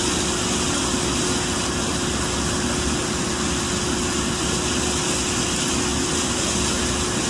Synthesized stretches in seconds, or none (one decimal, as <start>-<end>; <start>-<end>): none